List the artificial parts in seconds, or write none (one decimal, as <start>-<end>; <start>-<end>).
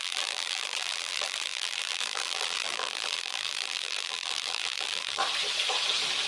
0.0-5.2